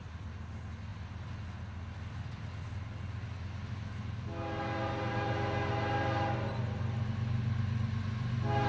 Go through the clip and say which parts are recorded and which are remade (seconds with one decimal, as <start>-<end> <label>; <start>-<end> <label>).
0.0-8.7 recorded